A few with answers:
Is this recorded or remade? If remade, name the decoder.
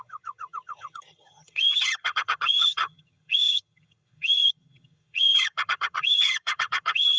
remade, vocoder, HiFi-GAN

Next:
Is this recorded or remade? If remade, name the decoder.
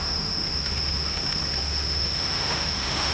remade, autoencoder, DAC-VAE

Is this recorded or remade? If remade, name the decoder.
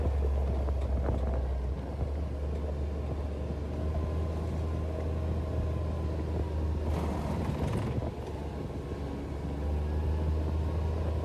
recorded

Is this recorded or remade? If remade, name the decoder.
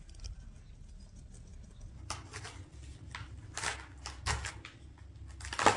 recorded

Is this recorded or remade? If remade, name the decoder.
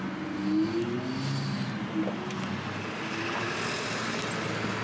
recorded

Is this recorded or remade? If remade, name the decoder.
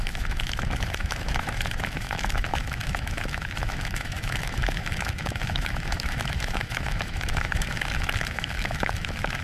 remade, autoencoder, DAC-VAE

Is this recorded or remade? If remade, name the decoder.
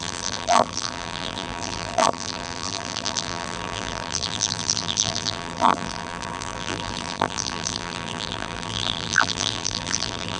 remade, vocoder, BigVGAN v2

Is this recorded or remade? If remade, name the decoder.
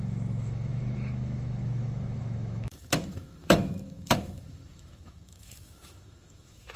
remade, autoencoder, DAC-VAE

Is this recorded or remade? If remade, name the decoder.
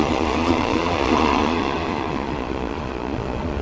remade, vocoder, Vocos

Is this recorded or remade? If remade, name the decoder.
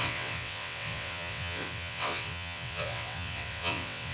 remade, vocoder, WaveNeXt